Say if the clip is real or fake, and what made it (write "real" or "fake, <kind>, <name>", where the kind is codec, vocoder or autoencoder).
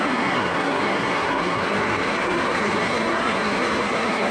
fake, codec, SNAC